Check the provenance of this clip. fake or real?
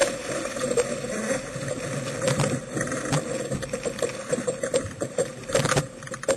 real